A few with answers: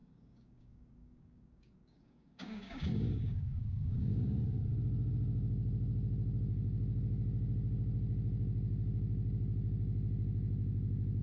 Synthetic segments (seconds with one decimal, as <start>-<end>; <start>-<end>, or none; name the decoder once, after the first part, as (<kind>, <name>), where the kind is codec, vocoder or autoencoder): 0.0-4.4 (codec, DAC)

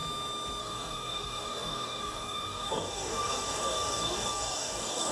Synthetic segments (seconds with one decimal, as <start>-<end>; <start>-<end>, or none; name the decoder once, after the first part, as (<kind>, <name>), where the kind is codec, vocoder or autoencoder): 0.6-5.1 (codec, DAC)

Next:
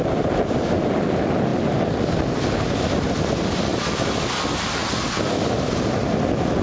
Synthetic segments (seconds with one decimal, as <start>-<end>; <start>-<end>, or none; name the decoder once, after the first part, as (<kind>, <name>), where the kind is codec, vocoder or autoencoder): none

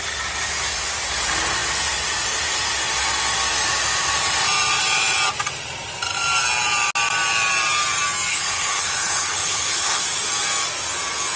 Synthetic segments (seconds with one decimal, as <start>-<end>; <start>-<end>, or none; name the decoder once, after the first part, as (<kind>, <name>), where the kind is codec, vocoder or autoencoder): 8.3-10.0 (codec, HILCodec)